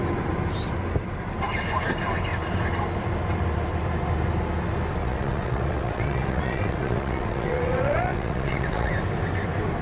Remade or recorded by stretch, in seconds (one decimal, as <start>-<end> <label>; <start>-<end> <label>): 0.0-5.0 recorded; 5.0-8.9 remade; 8.9-9.8 recorded